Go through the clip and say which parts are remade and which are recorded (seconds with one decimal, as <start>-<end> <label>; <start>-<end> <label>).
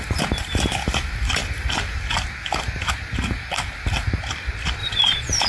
0.0-4.8 recorded; 4.8-5.5 remade